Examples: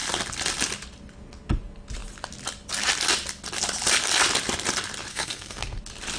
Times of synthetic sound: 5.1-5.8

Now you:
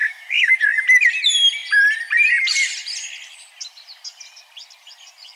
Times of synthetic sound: 0.0-0.5

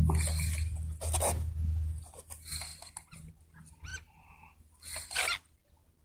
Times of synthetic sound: none

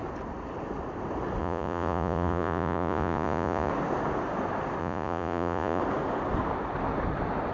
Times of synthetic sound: 1.4-3.7; 4.8-5.8

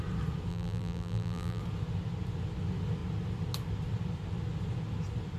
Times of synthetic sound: 0.5-1.6

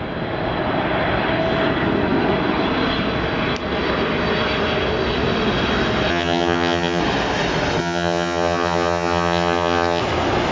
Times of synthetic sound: 6.1-7.0; 7.8-10.0

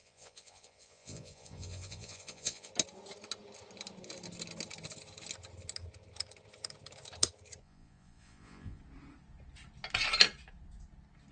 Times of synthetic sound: 0.0-2.7; 7.6-8.8

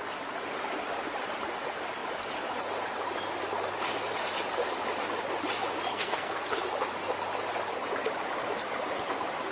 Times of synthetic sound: 5.9-6.5